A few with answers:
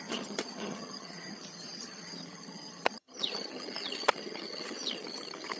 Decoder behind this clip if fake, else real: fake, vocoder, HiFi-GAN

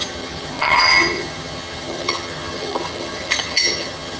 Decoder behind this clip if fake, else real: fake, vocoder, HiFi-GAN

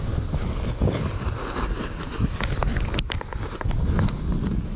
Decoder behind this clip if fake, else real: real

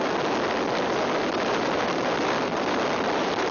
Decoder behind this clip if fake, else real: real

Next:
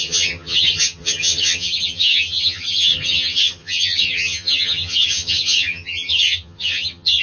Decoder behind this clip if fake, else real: fake, vocoder, HiFi-GAN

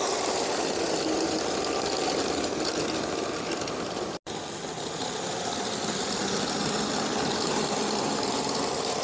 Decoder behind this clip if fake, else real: real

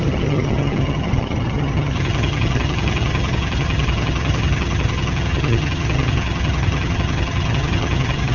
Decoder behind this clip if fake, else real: fake, vocoder, HiFi-GAN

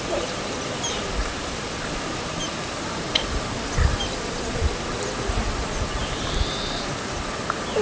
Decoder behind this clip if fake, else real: real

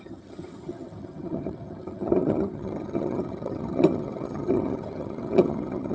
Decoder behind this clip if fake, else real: fake, vocoder, HiFi-GAN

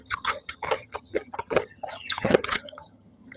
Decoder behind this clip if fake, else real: fake, vocoder, HiFi-GAN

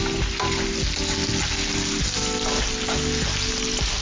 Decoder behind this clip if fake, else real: real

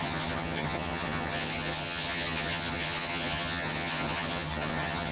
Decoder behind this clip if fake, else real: fake, vocoder, HiFi-GAN